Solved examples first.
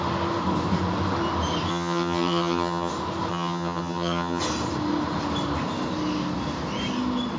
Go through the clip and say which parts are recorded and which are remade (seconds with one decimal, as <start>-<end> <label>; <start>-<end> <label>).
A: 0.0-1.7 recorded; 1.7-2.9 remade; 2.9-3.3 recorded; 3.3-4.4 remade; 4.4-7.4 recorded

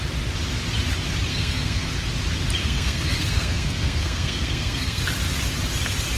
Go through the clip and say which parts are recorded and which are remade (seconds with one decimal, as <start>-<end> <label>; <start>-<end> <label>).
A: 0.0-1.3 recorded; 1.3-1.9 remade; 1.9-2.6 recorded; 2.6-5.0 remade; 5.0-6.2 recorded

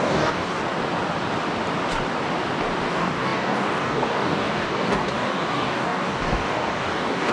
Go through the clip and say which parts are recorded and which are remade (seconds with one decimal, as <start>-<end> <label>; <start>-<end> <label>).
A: 0.0-0.6 remade; 0.6-2.9 recorded; 2.9-7.3 remade